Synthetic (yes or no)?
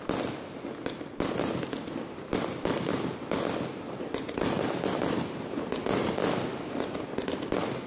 no